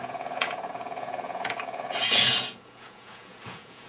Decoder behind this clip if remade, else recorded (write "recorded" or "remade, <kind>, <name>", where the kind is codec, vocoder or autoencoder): remade, vocoder, Vocos